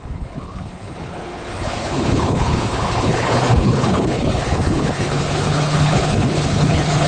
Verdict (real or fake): fake